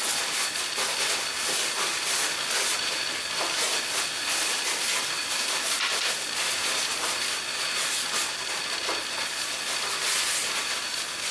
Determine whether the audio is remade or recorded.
recorded